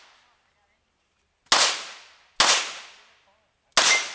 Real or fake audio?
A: real